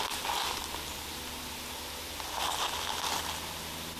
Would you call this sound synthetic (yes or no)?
no